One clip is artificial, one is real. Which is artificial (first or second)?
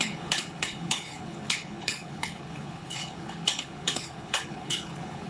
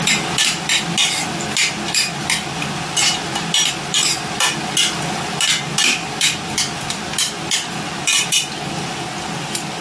first